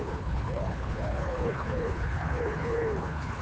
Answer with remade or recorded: remade